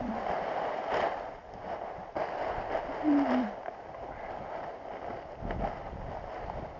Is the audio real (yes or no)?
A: yes